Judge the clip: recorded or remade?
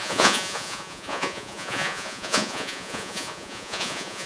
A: remade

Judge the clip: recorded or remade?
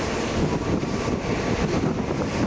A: recorded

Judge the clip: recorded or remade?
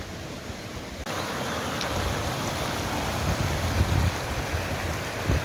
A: recorded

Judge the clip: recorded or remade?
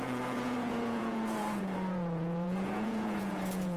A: remade